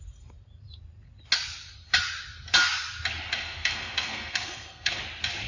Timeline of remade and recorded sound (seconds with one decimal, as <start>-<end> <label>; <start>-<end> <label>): 0.0-3.4 recorded; 3.4-5.0 remade; 5.0-5.5 recorded

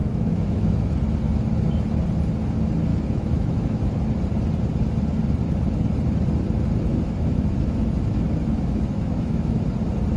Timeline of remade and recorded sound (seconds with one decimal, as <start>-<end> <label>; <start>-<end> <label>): 0.0-0.9 remade; 0.9-2.9 recorded; 2.9-4.0 remade; 4.0-6.9 recorded; 6.9-9.6 remade; 9.6-10.2 recorded

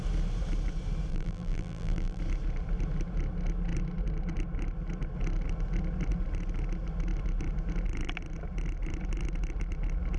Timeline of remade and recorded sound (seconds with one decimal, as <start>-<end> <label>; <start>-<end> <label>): 0.0-1.1 recorded; 1.1-2.2 remade; 2.2-10.2 recorded

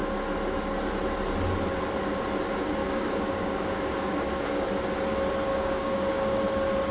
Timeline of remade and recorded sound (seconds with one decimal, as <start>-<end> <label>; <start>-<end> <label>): 0.0-2.8 recorded; 2.8-4.4 remade; 4.4-5.5 recorded; 5.5-6.4 remade; 6.4-6.9 recorded

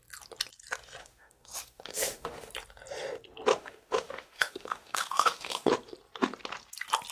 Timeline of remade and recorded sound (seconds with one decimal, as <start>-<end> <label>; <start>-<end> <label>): 0.0-1.0 recorded; 1.0-2.5 remade; 2.5-3.5 recorded; 3.5-5.7 remade; 5.7-7.1 recorded

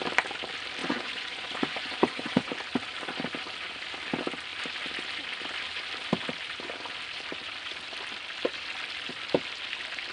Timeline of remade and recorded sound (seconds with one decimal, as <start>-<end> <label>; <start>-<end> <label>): 0.0-0.8 recorded; 0.8-2.5 remade; 2.5-10.1 recorded

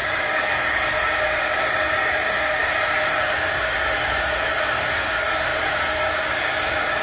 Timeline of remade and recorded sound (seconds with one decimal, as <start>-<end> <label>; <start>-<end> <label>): 0.0-7.0 remade

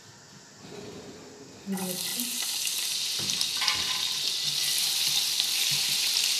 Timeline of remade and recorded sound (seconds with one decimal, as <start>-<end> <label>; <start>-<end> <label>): 0.0-6.4 recorded